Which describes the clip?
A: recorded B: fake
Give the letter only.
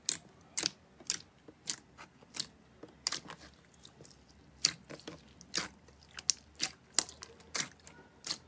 A